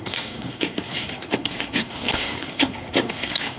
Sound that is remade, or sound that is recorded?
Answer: remade